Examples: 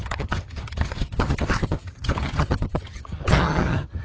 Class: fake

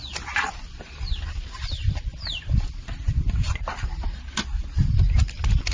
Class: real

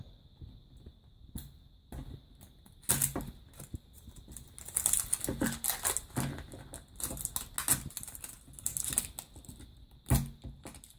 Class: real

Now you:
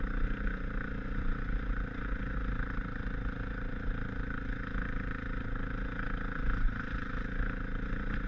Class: real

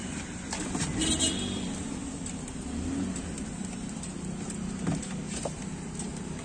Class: real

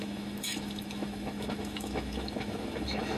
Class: fake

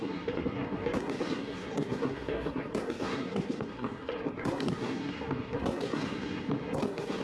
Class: fake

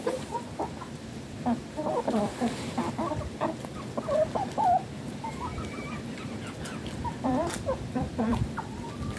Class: fake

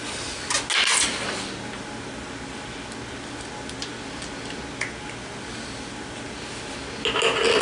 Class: real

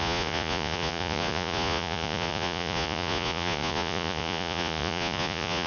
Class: fake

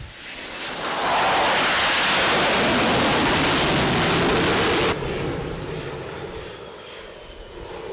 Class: real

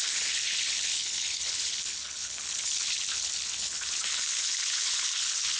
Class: fake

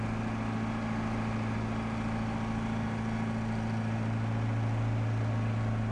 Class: real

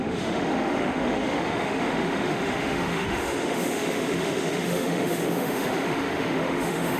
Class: fake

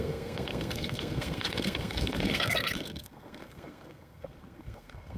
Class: fake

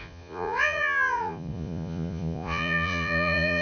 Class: fake